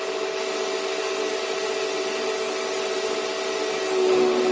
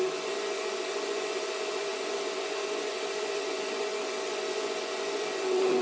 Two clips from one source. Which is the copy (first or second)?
second